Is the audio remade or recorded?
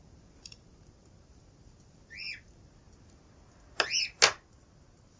recorded